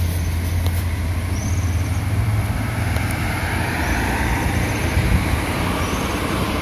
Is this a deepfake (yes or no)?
yes